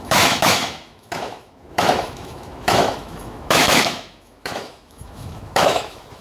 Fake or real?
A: fake